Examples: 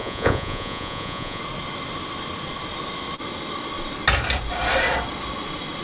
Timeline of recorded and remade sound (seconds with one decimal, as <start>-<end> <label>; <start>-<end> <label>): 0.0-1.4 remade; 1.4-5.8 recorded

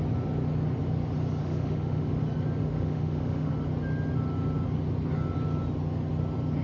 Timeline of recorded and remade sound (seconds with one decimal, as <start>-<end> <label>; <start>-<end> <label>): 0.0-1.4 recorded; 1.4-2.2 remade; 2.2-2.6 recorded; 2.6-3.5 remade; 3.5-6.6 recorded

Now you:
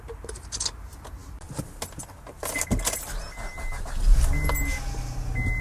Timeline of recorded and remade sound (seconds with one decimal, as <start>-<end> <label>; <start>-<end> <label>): 0.0-5.6 recorded

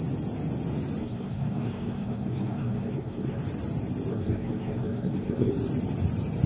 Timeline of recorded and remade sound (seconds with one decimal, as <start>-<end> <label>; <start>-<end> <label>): 0.0-1.0 recorded; 1.0-3.4 remade; 3.4-4.1 recorded; 4.1-5.5 remade; 5.5-6.5 recorded

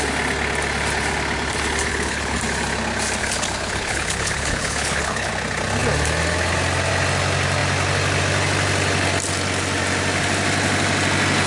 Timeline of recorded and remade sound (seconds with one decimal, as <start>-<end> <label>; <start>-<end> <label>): 0.0-1.9 recorded; 1.9-2.4 remade; 2.4-3.2 recorded; 3.2-5.3 remade; 5.3-11.5 recorded

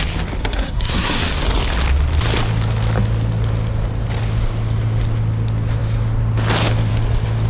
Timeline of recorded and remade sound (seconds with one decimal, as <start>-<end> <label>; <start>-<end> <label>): 0.0-0.4 recorded; 0.4-1.2 remade; 1.2-7.5 recorded